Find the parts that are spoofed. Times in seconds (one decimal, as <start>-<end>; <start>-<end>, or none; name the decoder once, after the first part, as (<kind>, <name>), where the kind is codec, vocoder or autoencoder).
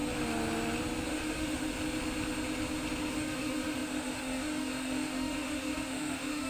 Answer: 1.1-1.7 (autoencoder, DAC-VAE); 3.1-6.5